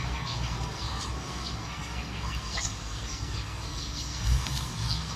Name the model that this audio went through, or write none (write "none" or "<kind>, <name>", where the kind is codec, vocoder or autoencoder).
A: codec, SNAC